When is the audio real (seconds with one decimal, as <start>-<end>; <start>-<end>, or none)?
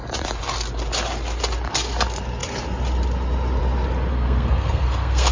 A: 0.0-4.1